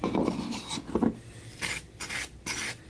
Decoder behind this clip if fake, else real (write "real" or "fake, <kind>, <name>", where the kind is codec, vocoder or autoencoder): real